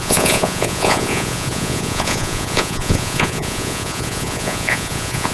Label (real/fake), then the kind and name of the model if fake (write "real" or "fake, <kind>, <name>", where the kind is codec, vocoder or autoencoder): fake, vocoder, Vocos